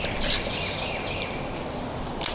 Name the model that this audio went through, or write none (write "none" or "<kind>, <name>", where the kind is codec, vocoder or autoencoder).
none